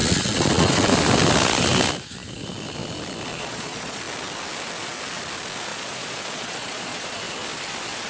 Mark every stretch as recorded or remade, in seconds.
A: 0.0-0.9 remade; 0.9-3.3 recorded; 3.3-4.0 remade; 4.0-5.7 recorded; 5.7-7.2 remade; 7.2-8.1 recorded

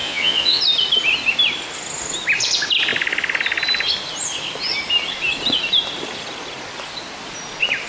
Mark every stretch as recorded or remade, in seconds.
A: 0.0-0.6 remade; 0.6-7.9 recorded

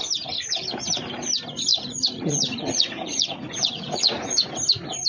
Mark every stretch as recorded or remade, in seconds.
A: 0.0-1.7 recorded; 1.7-4.5 remade; 4.5-5.1 recorded

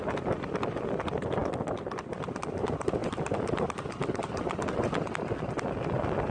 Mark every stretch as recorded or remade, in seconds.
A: 0.0-6.3 recorded